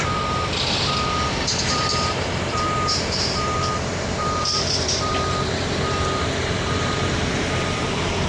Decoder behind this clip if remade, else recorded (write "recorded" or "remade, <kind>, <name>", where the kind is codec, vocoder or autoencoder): remade, vocoder, BigVGAN v2